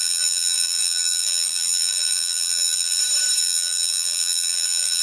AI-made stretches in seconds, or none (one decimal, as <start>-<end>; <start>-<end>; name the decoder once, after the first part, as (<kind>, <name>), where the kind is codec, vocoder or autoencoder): 0.0-3.0 (vocoder, BigVGAN v2); 3.4-5.0